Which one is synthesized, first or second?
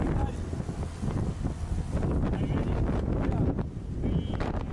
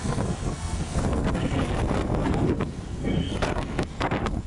second